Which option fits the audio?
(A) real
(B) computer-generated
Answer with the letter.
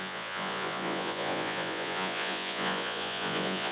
B